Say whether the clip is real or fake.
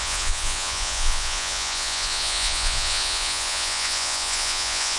fake